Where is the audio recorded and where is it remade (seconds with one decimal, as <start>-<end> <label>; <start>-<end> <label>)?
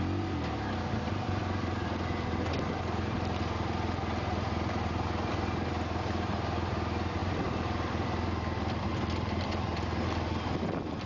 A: 0.0-7.2 recorded; 7.2-8.9 remade; 8.9-11.1 recorded